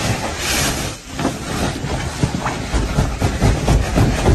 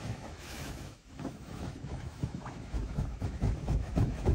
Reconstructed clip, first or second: second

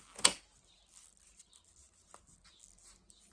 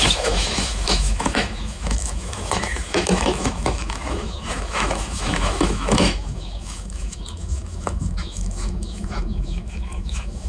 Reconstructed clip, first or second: second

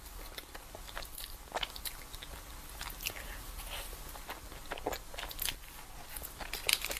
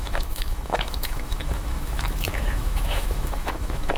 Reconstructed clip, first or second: second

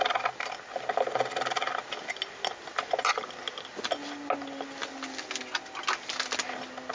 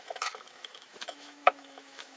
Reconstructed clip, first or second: second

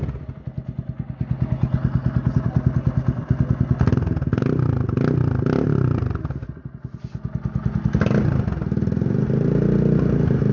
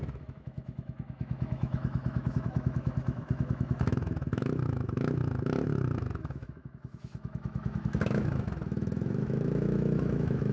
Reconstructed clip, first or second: second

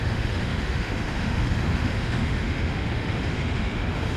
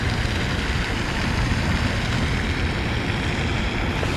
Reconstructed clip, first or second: first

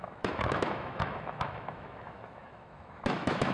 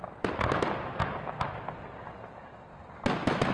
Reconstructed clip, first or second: first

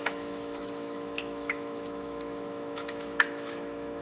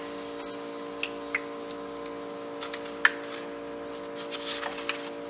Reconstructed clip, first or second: first